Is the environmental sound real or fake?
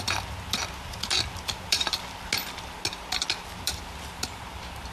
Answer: real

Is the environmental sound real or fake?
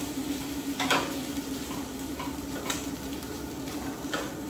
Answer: fake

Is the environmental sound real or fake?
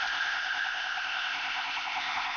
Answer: fake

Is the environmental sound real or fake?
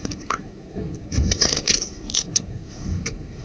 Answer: fake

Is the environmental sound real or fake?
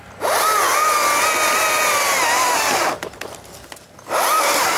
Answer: real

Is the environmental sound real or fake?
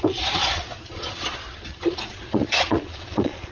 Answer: fake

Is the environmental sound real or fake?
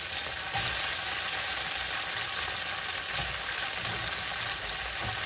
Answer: real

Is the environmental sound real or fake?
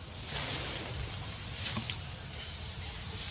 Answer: real